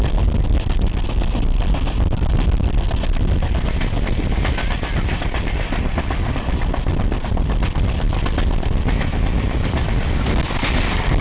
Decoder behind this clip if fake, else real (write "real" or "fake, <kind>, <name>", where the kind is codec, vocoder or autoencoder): real